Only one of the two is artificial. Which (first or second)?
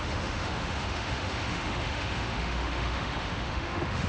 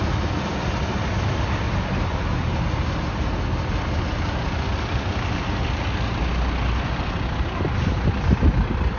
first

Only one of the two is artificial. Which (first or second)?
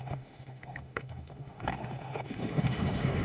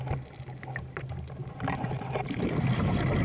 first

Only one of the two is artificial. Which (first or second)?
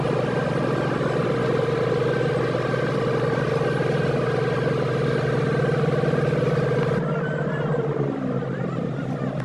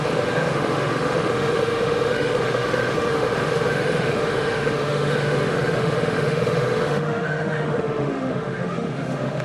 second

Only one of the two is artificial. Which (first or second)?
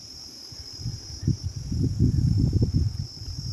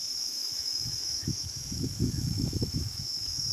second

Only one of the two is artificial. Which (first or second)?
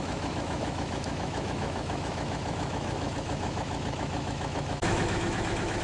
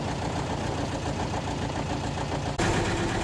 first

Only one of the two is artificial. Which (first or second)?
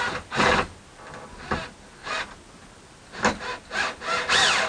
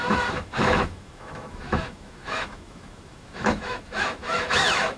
second